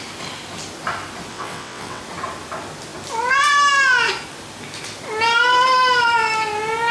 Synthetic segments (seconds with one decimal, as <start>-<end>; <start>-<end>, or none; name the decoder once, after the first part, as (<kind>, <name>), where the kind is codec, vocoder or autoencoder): 1.3-2.0 (vocoder, WaveNeXt)